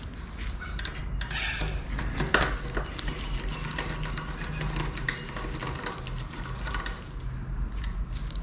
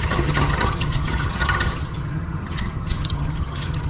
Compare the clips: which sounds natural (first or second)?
first